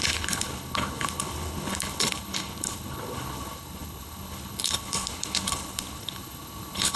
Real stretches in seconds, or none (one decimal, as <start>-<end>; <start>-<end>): none